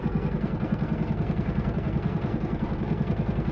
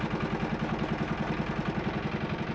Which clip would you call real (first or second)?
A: second